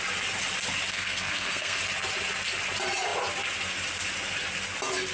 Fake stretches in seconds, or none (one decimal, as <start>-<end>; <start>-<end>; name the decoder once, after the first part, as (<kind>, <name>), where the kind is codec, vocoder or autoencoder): 0.9-1.8 (codec, SNAC)

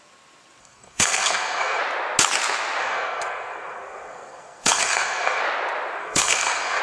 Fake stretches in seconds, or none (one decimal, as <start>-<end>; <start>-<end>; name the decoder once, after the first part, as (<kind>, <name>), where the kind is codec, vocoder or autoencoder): 0.6-1.8 (codec, SNAC); 2.8-5.4; 6.0-6.8

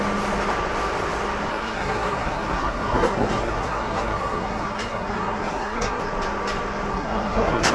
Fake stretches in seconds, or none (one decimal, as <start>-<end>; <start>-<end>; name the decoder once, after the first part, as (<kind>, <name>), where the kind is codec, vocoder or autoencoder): 1.5-6.0 (codec, SNAC); 6.9-7.7

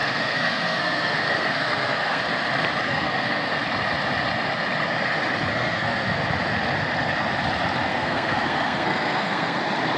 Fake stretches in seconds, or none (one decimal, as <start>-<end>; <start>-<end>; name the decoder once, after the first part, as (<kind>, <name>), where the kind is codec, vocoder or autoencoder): 0.0-2.2 (codec, SNAC); 2.9-3.5; 5.5-6.2; 7.9-9.6

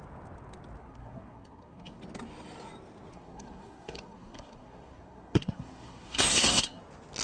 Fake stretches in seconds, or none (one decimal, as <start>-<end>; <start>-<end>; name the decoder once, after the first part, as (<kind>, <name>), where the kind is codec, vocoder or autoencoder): 0.8-2.0 (codec, SNAC); 3.1-6.8